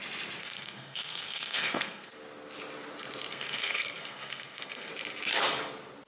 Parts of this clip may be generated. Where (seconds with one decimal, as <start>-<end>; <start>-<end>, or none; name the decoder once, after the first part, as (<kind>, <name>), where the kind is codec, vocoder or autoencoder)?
0.4-2.1 (codec, SNAC); 3.3-4.9